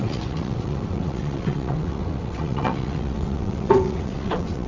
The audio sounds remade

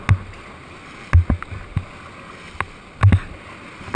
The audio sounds recorded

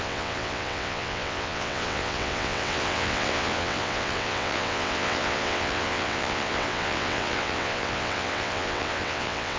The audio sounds remade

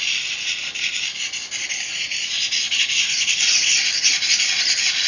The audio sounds recorded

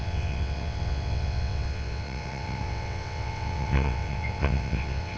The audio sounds remade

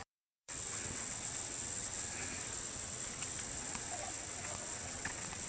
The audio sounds remade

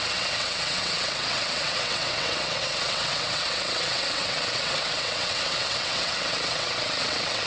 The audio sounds remade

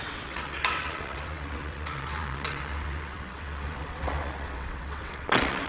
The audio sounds remade